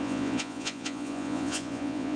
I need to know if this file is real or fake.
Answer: fake